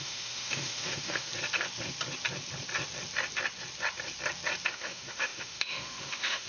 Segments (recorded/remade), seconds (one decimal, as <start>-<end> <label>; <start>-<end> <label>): 0.0-1.3 remade; 1.3-4.7 recorded; 4.7-6.5 remade